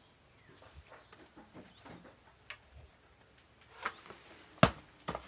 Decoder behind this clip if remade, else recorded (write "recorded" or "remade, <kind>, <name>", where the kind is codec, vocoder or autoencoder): recorded